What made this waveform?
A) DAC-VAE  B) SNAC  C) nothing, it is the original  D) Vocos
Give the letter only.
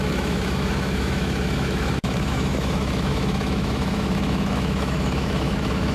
A